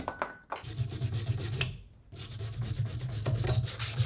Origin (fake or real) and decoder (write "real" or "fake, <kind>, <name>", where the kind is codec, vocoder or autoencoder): real